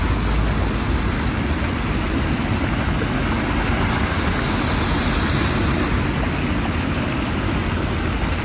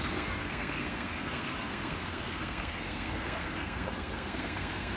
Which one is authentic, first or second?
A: first